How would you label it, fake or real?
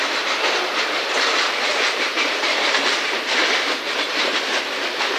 fake